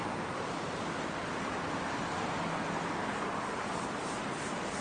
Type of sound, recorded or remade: remade